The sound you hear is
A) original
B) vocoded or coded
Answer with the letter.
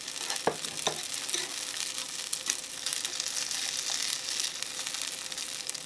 A